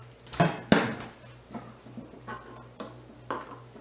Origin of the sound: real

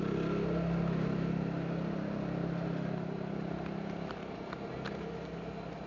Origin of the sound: real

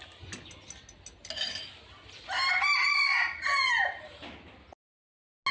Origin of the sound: real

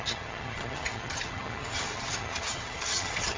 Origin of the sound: fake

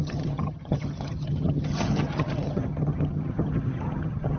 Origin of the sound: fake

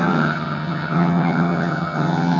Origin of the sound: fake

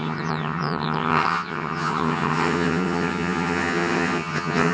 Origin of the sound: fake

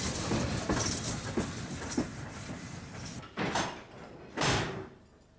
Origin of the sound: real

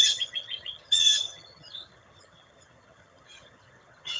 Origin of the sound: fake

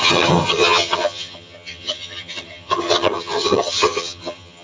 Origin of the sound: fake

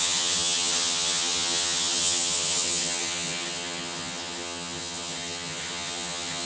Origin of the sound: fake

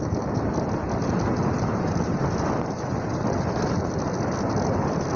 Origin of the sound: real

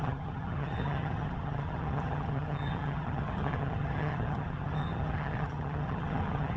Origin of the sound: fake